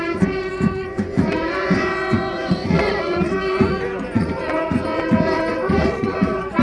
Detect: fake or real fake